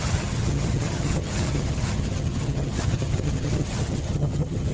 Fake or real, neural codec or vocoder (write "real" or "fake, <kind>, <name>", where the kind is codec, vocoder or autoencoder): fake, vocoder, HiFi-GAN